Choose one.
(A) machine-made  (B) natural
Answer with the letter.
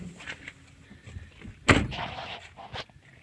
B